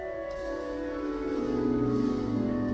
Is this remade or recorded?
remade